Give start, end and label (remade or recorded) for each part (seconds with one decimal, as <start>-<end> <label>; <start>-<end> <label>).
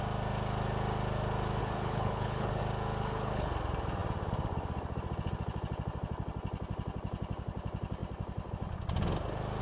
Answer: 0.0-1.6 recorded; 1.6-2.6 remade; 2.6-3.0 recorded; 3.0-3.5 remade; 3.5-9.6 recorded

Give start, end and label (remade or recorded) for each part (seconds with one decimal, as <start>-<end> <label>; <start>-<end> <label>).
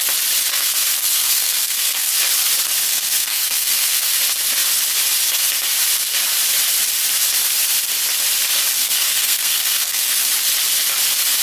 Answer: 0.0-0.5 recorded; 0.5-2.1 remade; 2.1-2.8 recorded; 2.8-4.1 remade; 4.1-8.8 recorded; 8.8-10.3 remade; 10.3-11.4 recorded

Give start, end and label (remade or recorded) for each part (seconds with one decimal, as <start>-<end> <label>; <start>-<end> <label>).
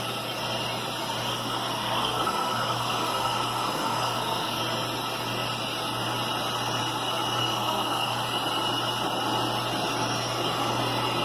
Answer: 0.0-1.3 recorded; 1.3-4.6 remade; 4.6-7.4 recorded; 7.4-8.2 remade; 8.2-11.2 recorded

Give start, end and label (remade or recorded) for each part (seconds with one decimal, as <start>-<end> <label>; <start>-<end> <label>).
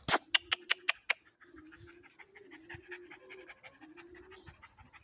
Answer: 0.0-5.0 recorded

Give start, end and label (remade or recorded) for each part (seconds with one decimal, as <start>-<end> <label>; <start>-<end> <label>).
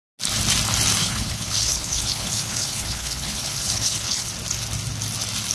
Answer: 0.0-1.0 recorded; 1.0-4.3 remade; 4.3-5.5 recorded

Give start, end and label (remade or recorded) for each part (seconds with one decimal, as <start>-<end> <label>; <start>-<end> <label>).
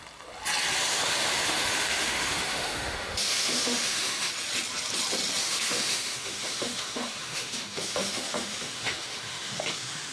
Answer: 0.0-0.9 recorded; 0.9-4.3 remade; 4.3-5.4 recorded; 5.4-10.1 remade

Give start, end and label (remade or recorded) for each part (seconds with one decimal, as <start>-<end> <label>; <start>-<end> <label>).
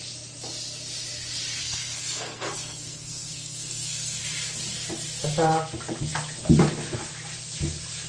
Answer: 0.0-1.6 recorded; 1.6-4.2 remade; 4.2-8.1 recorded